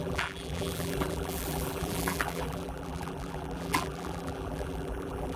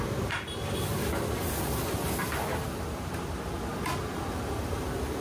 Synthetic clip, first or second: first